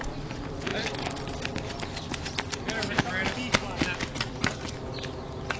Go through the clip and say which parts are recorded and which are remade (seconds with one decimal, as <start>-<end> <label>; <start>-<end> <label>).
0.0-5.6 recorded